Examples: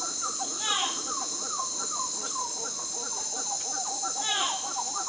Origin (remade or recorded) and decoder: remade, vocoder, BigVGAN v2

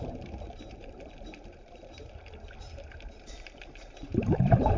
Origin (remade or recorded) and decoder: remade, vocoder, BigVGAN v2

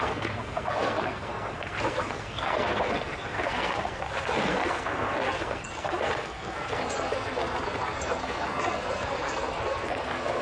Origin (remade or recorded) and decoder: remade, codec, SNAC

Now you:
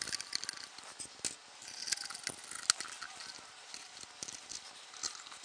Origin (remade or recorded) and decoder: recorded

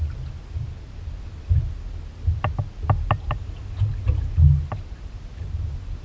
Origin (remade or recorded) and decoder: recorded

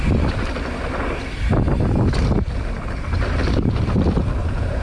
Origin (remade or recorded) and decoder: recorded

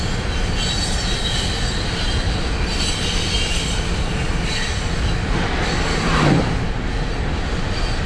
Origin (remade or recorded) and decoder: recorded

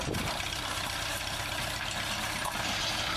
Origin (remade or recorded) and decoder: recorded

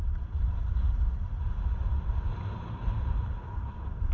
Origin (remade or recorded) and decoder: recorded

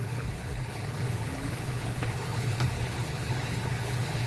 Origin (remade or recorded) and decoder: remade, codec, HILCodec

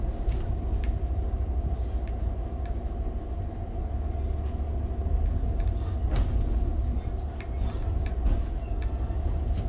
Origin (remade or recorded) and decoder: recorded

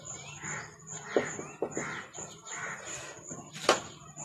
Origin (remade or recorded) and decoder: recorded